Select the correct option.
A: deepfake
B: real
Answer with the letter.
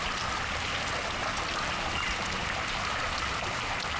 B